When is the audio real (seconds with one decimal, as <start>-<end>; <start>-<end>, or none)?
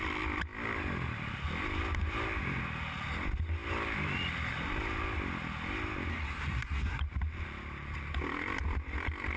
0.0-6.1; 7.0-9.4